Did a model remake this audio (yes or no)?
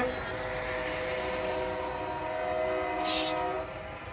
no